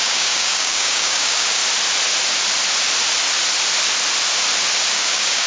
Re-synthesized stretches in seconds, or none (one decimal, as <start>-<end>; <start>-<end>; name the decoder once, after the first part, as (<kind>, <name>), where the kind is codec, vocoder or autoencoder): 0.0-1.6 (codec, DAC); 4.9-5.5